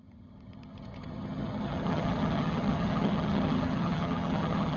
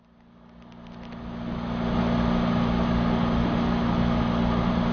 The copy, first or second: first